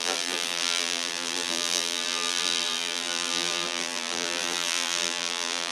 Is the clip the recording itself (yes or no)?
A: no